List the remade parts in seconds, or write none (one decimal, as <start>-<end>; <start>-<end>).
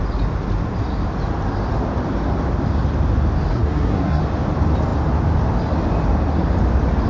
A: 3.5-4.2